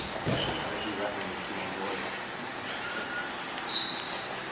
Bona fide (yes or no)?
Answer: yes